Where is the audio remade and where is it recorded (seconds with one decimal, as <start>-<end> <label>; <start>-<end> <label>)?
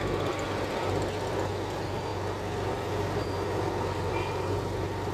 0.0-5.1 recorded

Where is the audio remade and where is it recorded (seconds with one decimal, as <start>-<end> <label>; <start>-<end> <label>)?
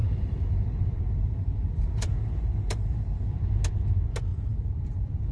0.0-3.2 remade; 3.2-4.3 recorded; 4.3-5.3 remade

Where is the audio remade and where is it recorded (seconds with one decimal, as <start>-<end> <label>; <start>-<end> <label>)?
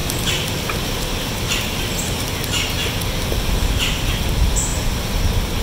0.0-5.6 recorded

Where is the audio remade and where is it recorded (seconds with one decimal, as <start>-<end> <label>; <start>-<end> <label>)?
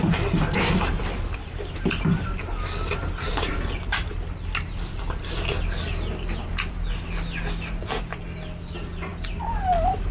0.0-10.1 recorded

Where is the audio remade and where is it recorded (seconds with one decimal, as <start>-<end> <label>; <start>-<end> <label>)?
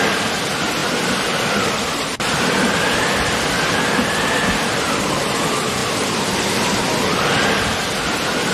0.0-0.8 recorded; 0.8-5.1 remade; 5.1-5.8 recorded; 5.8-6.8 remade; 6.8-8.5 recorded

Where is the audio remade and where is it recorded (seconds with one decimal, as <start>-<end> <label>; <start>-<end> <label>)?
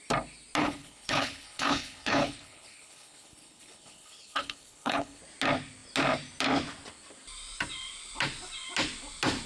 0.0-0.6 recorded; 0.6-5.2 remade; 5.2-9.5 recorded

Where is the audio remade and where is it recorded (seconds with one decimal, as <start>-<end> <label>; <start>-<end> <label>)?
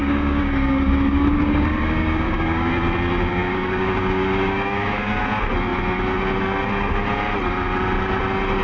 0.0-2.7 remade; 2.7-3.3 recorded; 3.3-5.2 remade; 5.2-8.6 recorded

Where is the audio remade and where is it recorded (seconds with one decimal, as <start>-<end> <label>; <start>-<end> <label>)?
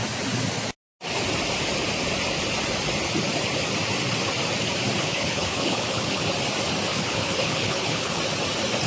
0.0-5.0 recorded; 5.0-6.2 remade; 6.2-6.9 recorded; 6.9-8.2 remade; 8.2-8.9 recorded